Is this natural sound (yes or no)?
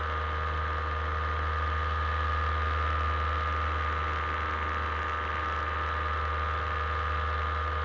yes